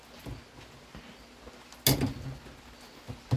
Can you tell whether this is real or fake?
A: real